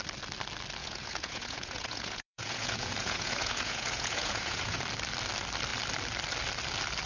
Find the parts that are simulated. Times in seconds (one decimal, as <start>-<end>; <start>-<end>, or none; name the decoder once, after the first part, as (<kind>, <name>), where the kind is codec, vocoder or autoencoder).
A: 0.8-4.8 (vocoder, Vocos)